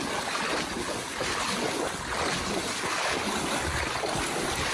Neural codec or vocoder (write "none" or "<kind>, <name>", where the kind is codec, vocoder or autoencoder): none